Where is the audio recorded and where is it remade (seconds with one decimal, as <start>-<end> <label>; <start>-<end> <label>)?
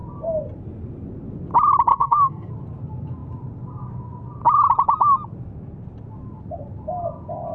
0.0-1.9 recorded; 1.9-2.5 remade; 2.5-7.5 recorded